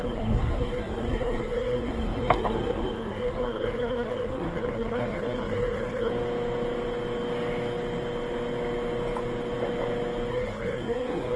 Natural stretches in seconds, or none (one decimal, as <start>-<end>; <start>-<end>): 6.1-10.3